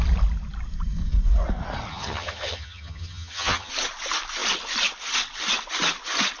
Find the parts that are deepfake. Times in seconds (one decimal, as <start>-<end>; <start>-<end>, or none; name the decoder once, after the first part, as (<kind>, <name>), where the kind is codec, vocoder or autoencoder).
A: 1.9-3.7 (vocoder, HiFi-GAN)